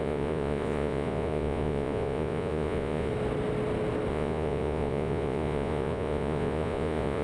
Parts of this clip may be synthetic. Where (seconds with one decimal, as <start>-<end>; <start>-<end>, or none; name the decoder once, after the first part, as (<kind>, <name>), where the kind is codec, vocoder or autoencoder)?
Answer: 0.0-3.1 (vocoder, Vocos); 4.1-7.2